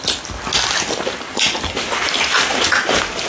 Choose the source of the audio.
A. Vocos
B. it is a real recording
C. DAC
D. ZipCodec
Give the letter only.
B